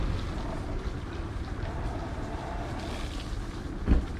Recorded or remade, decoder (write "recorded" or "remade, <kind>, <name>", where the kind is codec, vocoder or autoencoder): recorded